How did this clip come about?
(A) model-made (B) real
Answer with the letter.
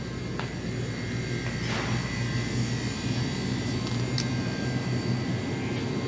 B